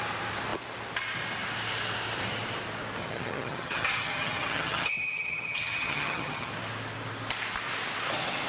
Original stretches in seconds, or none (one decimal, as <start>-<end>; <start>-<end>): 0.0-3.0; 6.5-8.5